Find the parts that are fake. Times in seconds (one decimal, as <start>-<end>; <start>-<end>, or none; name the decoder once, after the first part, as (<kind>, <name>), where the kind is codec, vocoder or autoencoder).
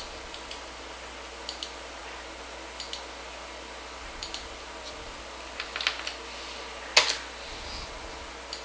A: none